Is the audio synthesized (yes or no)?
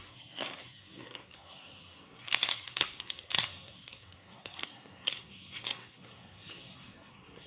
yes